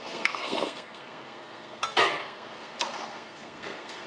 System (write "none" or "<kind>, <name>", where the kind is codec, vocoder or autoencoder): codec, SNAC